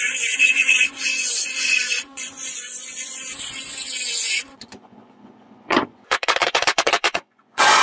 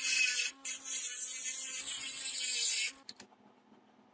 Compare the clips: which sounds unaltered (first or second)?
second